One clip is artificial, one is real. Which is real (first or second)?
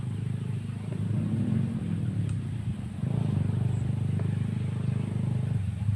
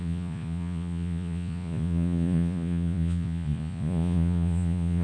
first